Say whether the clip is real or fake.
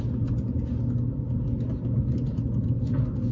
real